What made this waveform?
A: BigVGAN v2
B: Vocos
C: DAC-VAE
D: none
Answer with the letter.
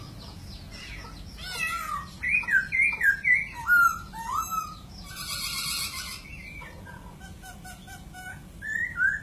D